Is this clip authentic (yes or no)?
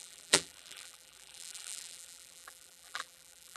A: no